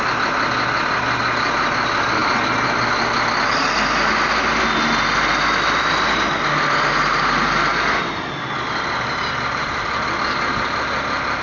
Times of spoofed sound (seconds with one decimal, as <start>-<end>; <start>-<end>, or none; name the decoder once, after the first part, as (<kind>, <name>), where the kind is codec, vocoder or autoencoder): none